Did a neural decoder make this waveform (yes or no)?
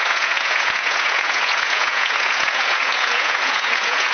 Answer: yes